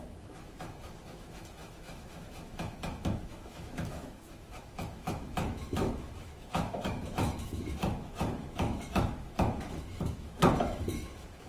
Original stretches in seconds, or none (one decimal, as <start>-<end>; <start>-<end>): none